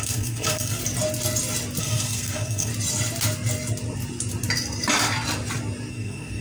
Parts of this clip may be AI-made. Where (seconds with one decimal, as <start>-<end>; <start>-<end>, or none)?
0.0-0.8; 1.8-2.7; 5.9-6.4